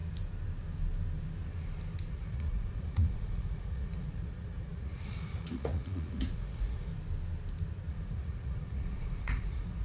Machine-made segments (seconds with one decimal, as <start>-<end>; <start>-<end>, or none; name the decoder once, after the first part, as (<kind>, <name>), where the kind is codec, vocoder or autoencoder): 2.1-6.9 (vocoder, Vocos); 7.9-9.8